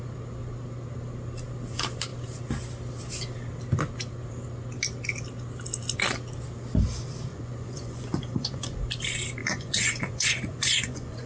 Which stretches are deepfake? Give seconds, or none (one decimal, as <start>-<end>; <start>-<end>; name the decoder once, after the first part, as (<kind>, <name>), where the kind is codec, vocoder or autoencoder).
7.3-8.8 (vocoder, Vocos); 9.4-11.3